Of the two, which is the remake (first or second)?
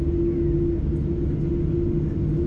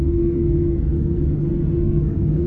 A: second